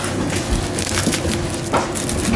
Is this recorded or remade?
recorded